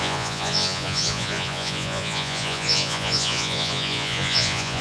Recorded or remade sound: remade